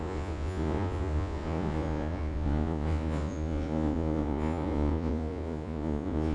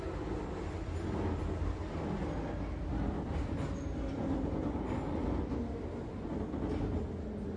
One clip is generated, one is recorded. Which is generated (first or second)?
first